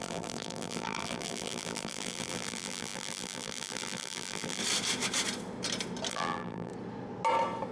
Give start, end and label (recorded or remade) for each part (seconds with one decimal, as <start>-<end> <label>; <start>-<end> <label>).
0.0-4.6 remade; 4.6-6.1 recorded; 6.1-6.7 remade; 6.7-7.7 recorded

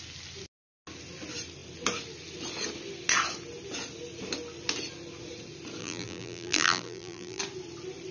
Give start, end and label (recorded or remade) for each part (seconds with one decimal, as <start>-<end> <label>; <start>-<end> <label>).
0.0-5.8 recorded; 5.8-7.4 remade; 7.4-8.1 recorded

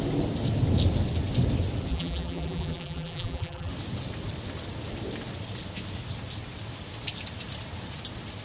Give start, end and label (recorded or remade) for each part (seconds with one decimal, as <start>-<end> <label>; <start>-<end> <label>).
0.0-1.9 recorded; 1.9-3.7 remade; 3.7-8.4 recorded

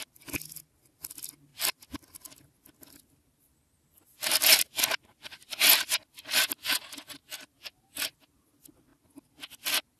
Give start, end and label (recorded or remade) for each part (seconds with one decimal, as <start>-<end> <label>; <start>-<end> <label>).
0.0-7.2 recorded; 7.2-7.8 remade; 7.8-10.0 recorded